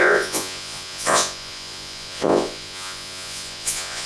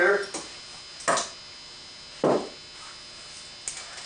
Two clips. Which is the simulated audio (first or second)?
first